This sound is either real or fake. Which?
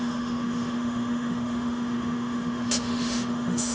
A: fake